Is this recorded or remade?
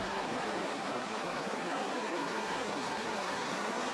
remade